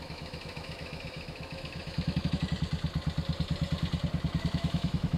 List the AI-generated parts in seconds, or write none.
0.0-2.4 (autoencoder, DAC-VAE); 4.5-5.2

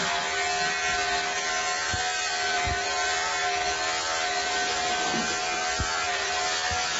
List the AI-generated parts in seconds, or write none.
none